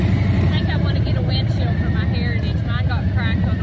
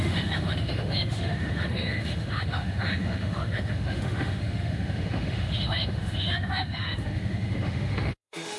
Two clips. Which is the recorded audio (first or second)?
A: first